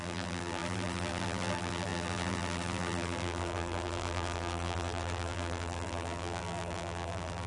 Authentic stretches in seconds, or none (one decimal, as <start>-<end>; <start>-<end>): none